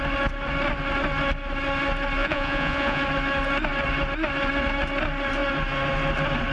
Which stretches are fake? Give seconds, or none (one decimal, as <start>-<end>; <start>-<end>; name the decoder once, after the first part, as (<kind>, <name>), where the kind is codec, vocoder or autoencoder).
2.2-3.0 (vocoder, Vocos)